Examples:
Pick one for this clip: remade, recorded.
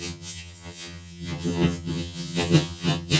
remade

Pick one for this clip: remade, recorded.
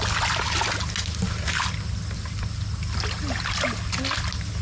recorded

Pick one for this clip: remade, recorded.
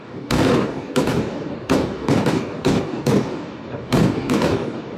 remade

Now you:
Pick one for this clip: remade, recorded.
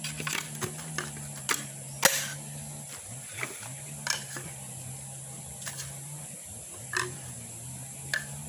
recorded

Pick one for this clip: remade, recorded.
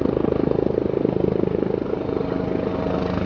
recorded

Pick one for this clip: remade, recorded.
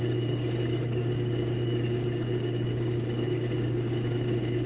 remade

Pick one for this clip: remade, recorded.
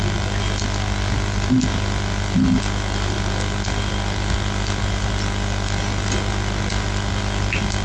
recorded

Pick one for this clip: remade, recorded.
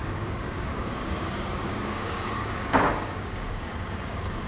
remade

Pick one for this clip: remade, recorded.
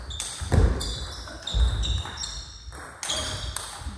recorded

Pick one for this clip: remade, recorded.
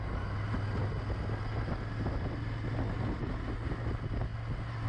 recorded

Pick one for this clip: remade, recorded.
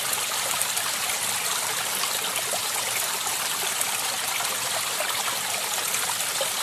recorded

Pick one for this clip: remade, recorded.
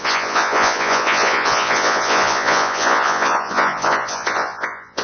remade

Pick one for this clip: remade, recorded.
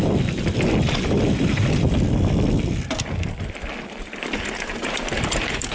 remade